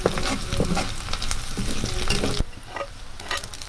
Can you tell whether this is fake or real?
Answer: real